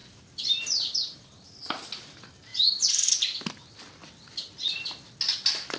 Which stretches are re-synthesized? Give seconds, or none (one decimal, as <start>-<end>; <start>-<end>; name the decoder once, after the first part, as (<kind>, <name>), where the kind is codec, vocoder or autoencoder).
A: 0.0-1.5 (vocoder, BigVGAN v2); 2.5-3.1